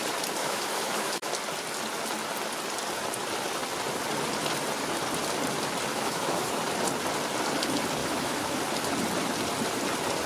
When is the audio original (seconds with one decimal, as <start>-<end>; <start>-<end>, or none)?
0.0-0.4; 1.3-5.9; 6.6-8.0; 8.6-10.3